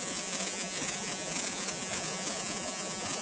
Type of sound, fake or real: fake